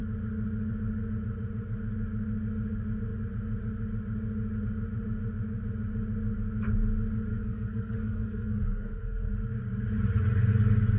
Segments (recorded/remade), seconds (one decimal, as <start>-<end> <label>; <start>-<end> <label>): 0.0-7.3 recorded; 7.3-9.3 remade; 9.3-11.0 recorded